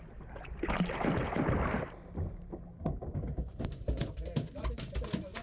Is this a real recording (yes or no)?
yes